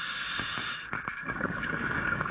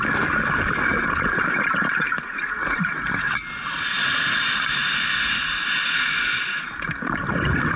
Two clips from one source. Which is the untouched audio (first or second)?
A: second